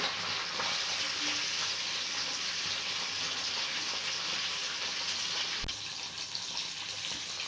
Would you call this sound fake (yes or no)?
no